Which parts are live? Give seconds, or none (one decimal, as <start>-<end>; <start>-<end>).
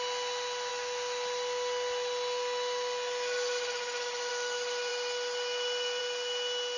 0.0-6.8